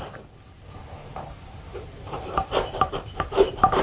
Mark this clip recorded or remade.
remade